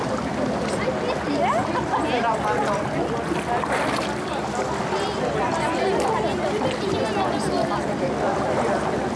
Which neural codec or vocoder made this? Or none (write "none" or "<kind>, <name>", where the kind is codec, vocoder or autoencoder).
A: none